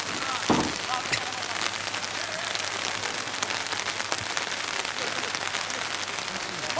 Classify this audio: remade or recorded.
remade